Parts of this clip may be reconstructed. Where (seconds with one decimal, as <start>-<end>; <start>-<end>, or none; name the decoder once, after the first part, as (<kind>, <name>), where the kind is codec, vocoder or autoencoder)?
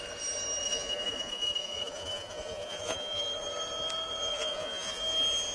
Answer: 0.6-3.2 (vocoder, Vocos); 4.3-5.0